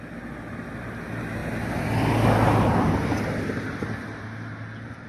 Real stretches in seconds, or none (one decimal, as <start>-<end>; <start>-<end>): 0.0-5.1